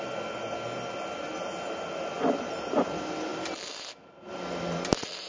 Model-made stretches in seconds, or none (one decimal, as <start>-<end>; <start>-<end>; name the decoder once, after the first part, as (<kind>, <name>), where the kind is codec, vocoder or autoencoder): none